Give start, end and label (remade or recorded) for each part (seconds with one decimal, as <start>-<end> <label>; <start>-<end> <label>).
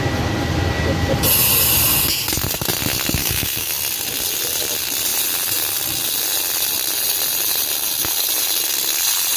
0.0-3.2 recorded; 3.2-3.7 remade; 3.7-9.4 recorded